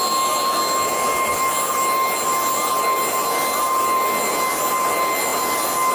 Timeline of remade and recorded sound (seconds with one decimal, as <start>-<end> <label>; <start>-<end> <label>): 0.0-5.9 recorded